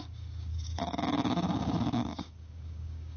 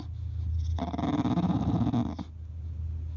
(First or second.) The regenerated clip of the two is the first